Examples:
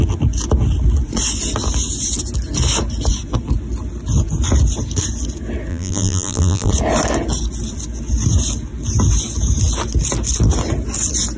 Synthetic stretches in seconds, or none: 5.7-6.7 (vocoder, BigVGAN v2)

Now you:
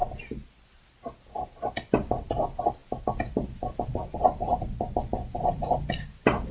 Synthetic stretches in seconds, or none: none